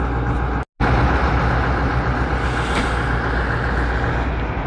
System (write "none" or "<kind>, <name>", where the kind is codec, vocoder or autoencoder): none